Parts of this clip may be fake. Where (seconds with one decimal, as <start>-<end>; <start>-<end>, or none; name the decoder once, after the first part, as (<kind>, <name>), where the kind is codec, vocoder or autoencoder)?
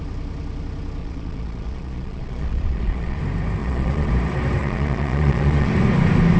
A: 1.0-3.2 (vocoder, Vocos); 3.6-4.1; 4.6-5.7